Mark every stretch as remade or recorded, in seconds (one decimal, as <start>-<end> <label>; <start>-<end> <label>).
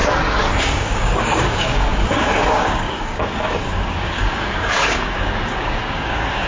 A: 0.0-0.6 recorded; 0.6-6.5 remade